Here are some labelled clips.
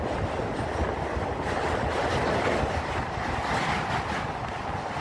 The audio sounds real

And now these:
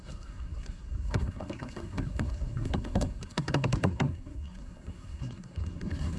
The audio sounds fake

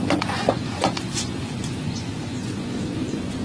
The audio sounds fake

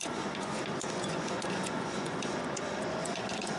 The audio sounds fake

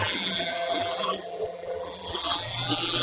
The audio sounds fake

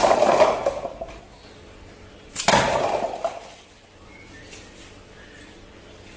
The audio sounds fake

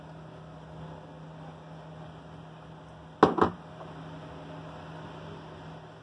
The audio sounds real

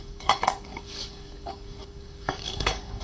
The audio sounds fake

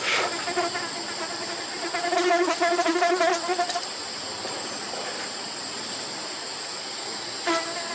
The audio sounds real